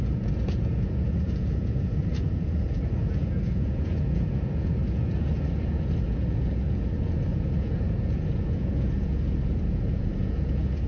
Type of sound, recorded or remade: remade